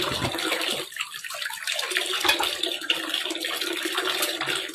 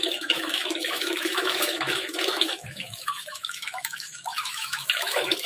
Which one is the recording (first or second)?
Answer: first